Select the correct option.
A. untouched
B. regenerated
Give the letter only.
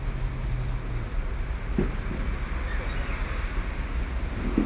A